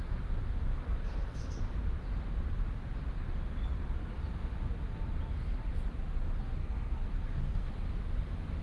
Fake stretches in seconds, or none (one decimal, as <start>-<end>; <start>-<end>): 0.7-1.6; 6.6-7.7